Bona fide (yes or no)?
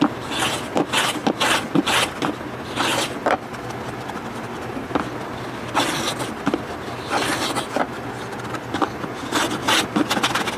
yes